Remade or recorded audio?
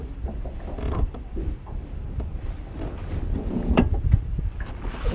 remade